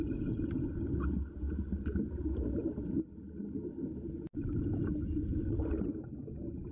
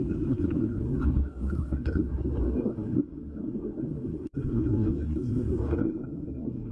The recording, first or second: first